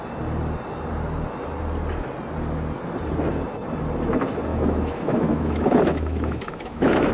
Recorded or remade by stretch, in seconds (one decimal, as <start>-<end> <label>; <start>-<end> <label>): 0.0-4.5 recorded; 4.5-7.1 remade

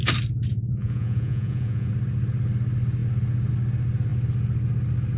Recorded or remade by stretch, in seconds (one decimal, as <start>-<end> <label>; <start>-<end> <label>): 0.0-0.5 recorded; 0.5-1.9 remade; 1.9-5.2 recorded

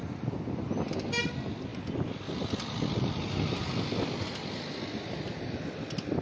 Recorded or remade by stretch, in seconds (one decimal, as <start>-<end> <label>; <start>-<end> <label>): 0.0-6.2 recorded